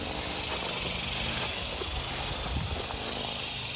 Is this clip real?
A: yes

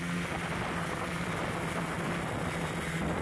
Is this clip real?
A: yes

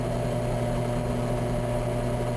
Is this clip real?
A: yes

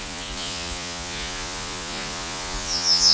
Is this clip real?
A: no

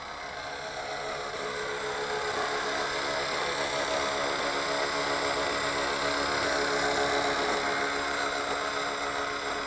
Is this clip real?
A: yes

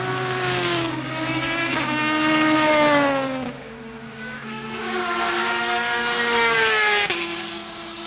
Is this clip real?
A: no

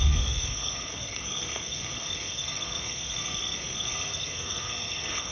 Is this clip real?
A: no